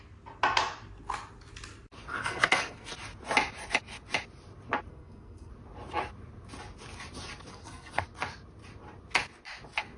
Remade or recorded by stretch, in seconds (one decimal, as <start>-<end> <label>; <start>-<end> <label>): 0.0-2.2 recorded; 2.2-2.9 remade; 2.9-4.9 recorded; 4.9-5.5 remade; 5.5-7.5 recorded; 7.5-8.0 remade; 8.0-10.0 recorded